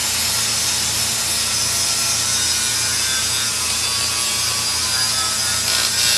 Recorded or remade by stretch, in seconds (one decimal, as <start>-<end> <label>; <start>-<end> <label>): 0.0-6.2 recorded